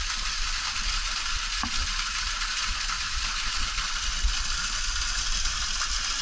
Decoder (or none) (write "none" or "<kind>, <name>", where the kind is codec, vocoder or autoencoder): none